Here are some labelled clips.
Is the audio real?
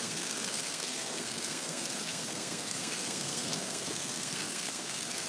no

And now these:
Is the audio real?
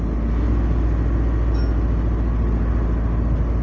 yes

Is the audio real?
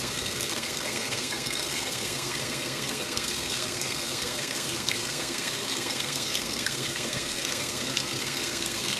no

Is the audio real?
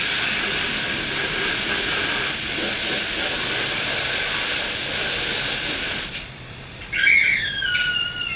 yes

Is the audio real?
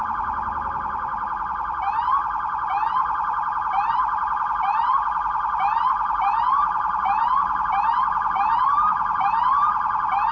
yes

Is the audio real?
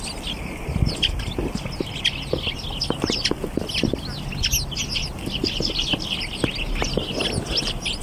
yes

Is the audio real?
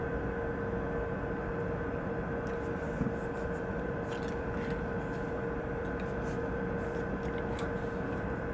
yes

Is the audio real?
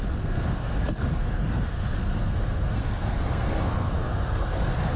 no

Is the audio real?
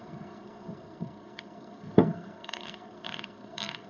no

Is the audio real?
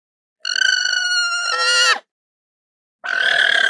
yes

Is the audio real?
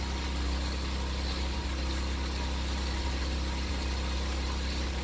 yes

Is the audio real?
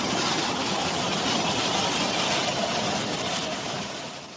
yes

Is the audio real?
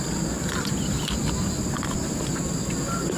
yes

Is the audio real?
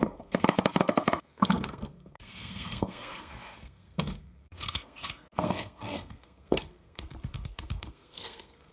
no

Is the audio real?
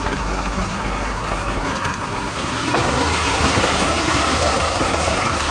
no